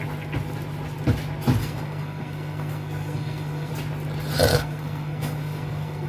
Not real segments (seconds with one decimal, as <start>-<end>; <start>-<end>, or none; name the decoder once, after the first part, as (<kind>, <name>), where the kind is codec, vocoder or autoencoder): 1.6-3.7 (codec, SNAC); 4.5-6.1